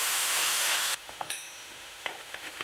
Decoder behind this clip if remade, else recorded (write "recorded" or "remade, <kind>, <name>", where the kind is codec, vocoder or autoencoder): remade, autoencoder, DAC-VAE